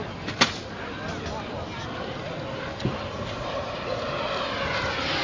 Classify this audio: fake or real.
real